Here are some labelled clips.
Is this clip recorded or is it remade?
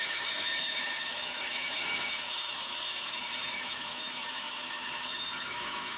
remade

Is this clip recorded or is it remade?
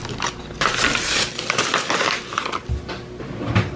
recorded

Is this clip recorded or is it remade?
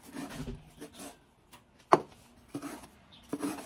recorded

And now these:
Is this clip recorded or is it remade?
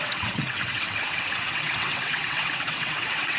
remade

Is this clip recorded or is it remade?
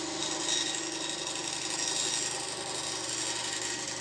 recorded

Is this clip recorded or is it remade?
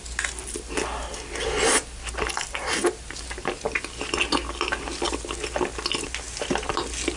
recorded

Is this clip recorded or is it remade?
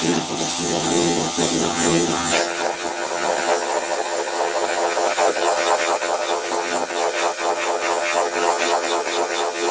remade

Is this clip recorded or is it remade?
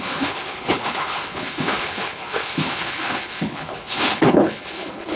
remade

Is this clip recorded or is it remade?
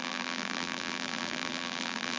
remade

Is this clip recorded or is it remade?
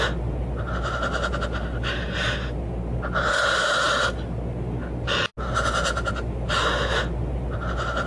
recorded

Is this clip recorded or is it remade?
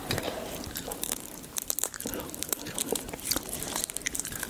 remade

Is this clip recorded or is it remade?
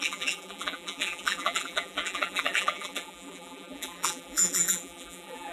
remade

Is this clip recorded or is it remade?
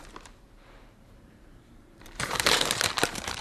remade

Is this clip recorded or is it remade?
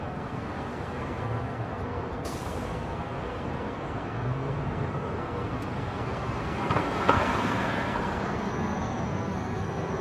remade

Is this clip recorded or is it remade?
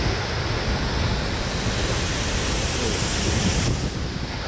recorded